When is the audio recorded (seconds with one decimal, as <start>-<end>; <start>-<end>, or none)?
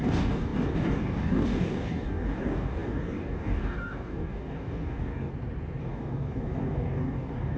5.3-5.8